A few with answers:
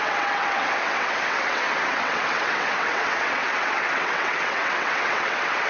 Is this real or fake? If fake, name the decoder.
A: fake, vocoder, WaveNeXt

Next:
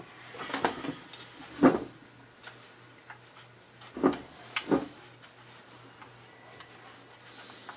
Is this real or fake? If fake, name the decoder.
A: real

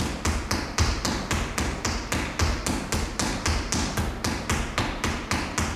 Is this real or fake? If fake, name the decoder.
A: real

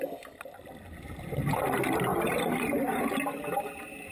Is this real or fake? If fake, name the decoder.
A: real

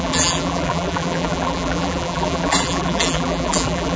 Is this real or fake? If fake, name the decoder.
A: fake, vocoder, BigVGAN v2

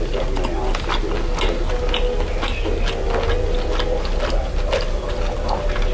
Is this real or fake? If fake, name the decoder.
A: real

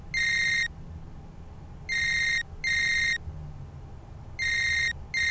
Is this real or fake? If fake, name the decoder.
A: real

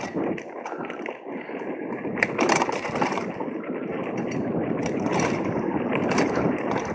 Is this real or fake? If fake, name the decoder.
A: fake, vocoder, BigVGAN v2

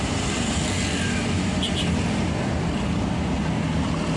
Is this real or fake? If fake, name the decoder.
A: real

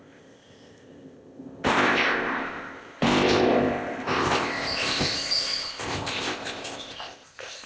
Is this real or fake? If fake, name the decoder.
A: fake, codec, ZipCodec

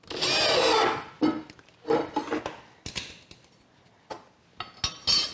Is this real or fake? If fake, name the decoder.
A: real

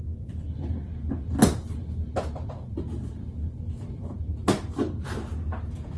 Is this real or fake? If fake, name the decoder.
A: real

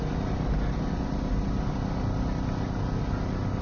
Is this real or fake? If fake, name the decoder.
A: real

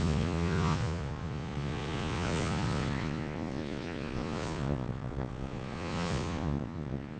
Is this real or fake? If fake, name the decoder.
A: fake, vocoder, Vocos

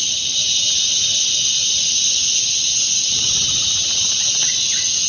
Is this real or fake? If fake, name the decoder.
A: real